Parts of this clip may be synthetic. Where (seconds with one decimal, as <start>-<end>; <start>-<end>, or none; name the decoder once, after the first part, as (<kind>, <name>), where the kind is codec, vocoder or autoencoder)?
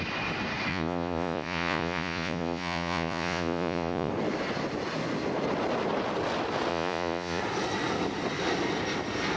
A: 0.7-4.1 (vocoder, Vocos); 6.7-7.4